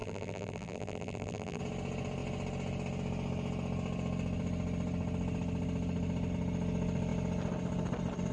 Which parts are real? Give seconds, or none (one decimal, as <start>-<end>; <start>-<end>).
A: 1.6-8.3